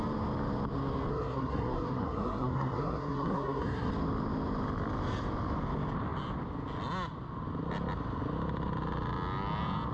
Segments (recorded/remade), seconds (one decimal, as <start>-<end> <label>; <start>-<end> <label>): 0.0-1.1 recorded; 1.1-3.9 remade; 3.9-9.9 recorded

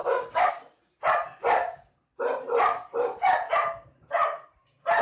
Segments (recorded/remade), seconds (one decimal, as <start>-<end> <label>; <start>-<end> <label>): 0.0-0.5 remade; 0.5-5.0 recorded